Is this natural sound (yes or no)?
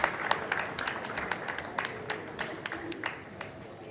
yes